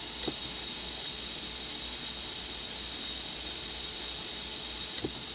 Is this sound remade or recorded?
recorded